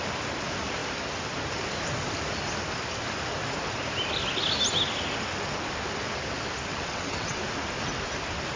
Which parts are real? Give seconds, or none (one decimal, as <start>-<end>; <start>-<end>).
0.0-6.7; 7.4-8.6